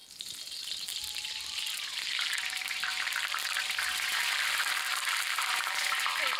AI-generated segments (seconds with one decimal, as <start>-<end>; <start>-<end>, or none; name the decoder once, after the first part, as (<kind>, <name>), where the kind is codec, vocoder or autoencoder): 0.0-3.5 (vocoder, BigVGAN v2); 4.9-6.4